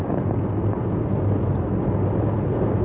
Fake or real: real